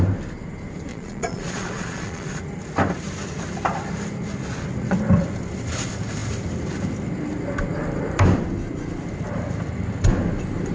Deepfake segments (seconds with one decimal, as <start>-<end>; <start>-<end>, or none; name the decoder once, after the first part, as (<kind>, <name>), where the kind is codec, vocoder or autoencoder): 0.9-2.4 (vocoder, Vocos)